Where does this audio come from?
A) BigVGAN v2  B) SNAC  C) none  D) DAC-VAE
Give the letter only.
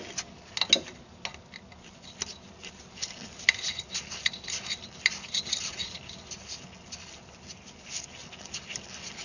C